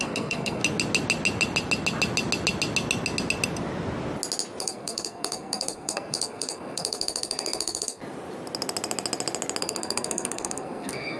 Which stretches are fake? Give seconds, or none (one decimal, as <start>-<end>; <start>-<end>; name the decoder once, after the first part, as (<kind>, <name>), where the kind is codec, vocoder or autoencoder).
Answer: 0.0-0.6 (codec, SNAC); 4.6-8.0; 9.6-11.2